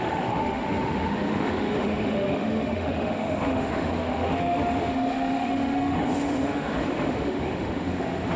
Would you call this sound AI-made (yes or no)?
yes